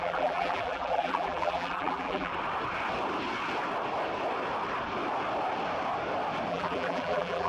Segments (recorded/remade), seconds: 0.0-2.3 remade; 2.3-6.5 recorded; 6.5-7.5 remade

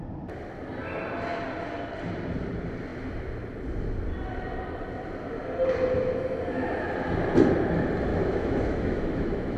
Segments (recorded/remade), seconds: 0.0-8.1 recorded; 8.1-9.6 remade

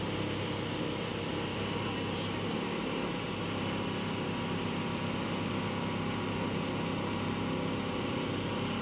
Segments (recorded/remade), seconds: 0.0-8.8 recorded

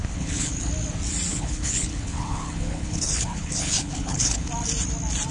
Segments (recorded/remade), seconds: 0.0-0.7 remade; 0.7-1.3 recorded; 1.3-4.5 remade; 4.5-5.3 recorded

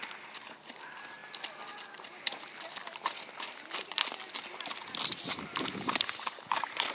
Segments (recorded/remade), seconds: 0.0-6.9 recorded

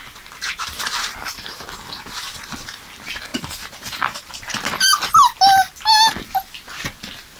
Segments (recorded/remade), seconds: 0.0-3.3 recorded; 3.3-4.3 remade; 4.3-7.4 recorded